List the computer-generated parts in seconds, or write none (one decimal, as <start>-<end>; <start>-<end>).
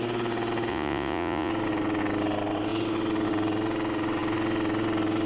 0.7-1.5